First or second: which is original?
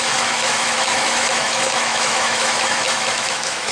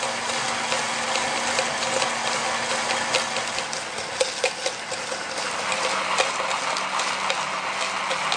second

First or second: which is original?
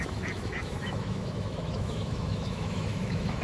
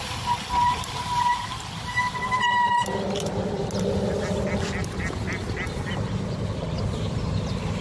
second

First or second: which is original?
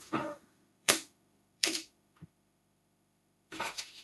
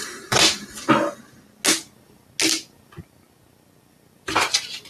second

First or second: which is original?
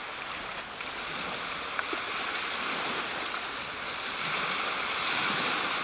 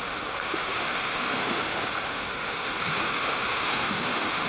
first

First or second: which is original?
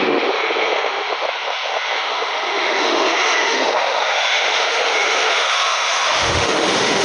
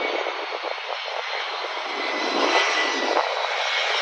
second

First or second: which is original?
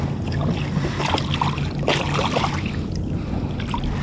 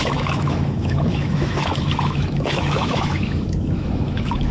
first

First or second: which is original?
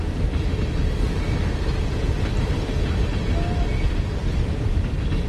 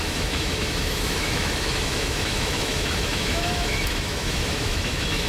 first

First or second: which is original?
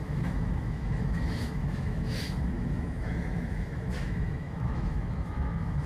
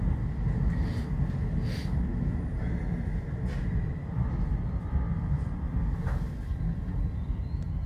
second